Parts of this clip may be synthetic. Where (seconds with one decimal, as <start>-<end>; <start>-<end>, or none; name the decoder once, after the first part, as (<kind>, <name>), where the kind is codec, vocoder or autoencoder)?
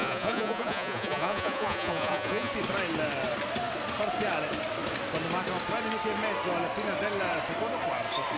0.0-2.5 (vocoder, Vocos)